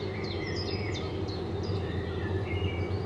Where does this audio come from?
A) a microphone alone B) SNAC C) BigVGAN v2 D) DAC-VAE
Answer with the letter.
A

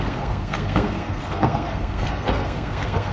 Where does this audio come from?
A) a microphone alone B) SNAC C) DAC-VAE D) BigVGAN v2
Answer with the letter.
B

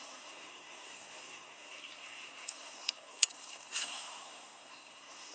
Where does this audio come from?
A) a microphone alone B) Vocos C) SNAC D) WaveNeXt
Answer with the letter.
C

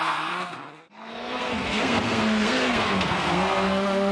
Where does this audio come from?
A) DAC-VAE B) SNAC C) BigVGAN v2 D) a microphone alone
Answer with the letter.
B